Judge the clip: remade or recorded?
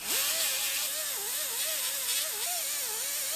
recorded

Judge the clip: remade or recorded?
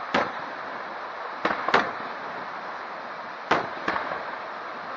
recorded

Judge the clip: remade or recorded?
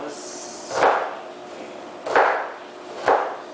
recorded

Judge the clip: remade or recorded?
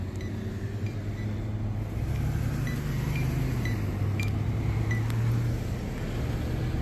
recorded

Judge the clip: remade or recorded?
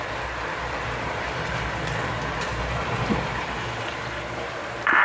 remade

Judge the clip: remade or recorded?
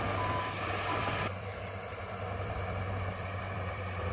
remade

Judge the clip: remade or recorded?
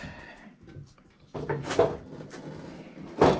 recorded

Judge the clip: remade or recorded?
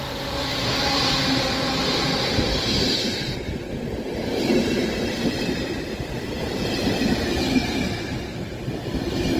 remade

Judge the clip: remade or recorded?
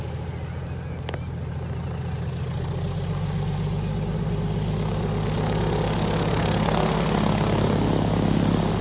recorded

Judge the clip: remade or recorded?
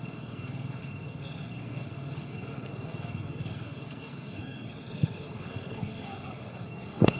remade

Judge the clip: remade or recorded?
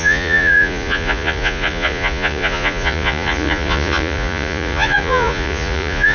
remade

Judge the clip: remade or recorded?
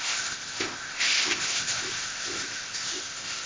remade